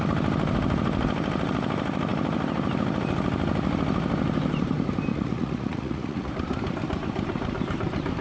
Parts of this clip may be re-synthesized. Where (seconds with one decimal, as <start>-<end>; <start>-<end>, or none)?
5.1-6.3